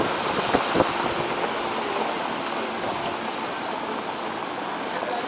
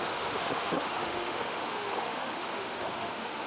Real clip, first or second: first